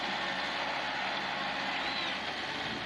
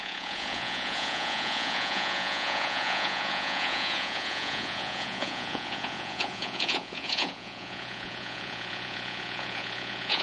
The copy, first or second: second